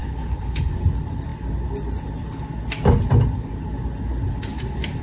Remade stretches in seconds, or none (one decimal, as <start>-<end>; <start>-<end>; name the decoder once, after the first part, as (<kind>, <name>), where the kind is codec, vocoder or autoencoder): 0.0-0.7 (codec, HILCodec)